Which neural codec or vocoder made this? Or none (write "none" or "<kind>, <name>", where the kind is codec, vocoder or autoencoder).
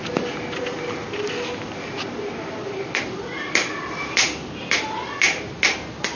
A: none